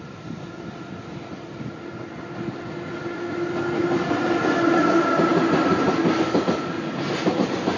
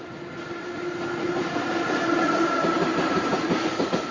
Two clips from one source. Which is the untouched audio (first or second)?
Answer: first